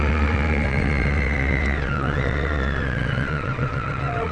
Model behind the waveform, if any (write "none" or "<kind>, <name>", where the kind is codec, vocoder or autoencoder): vocoder, WaveNeXt